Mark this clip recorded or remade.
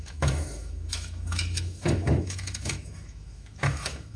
remade